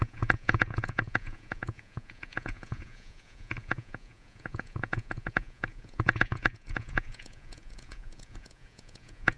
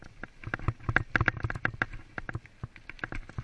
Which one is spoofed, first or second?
first